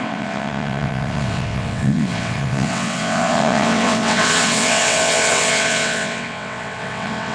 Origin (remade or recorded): remade